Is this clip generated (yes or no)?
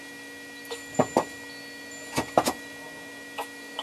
no